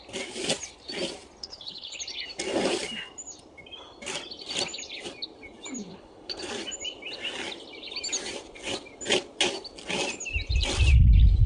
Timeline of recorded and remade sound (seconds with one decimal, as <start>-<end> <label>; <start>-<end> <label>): 0.0-1.4 recorded; 1.4-2.0 remade; 2.0-5.9 recorded; 5.9-6.5 remade; 6.5-11.5 recorded